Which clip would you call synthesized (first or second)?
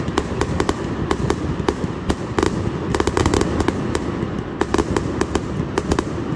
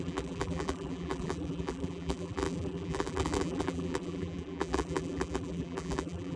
second